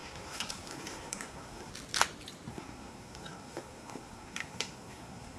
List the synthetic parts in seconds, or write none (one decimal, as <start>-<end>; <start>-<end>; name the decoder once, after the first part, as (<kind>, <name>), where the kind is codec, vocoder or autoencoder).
0.0-1.7 (codec, SNAC); 2.5-5.4